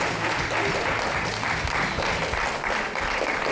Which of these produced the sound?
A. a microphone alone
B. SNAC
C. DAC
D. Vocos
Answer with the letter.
A